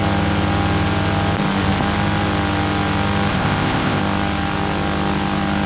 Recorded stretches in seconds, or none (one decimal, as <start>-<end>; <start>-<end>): 0.0-3.3; 4.0-5.7